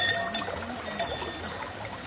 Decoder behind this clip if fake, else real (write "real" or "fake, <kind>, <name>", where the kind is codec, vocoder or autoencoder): real